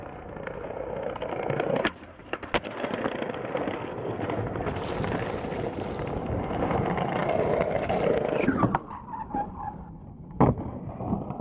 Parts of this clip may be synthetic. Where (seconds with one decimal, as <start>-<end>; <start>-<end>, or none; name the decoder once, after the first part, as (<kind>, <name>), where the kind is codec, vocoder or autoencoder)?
none